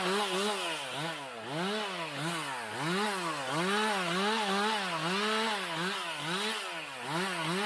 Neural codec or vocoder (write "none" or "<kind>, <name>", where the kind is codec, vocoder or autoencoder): none